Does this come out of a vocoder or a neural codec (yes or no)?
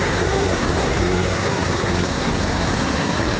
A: yes